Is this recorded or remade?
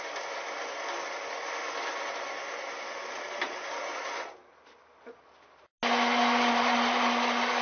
recorded